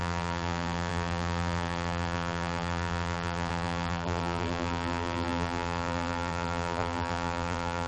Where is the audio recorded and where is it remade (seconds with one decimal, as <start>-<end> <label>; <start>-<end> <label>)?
0.0-7.9 remade

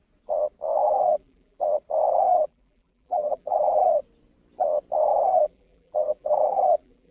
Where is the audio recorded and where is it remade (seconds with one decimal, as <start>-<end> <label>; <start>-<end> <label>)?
0.0-0.8 recorded; 0.8-1.6 remade; 1.6-2.1 recorded; 2.1-4.0 remade; 4.0-5.3 recorded; 5.3-7.1 remade